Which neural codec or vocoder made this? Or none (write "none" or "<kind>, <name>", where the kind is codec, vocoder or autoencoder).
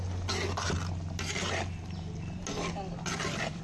none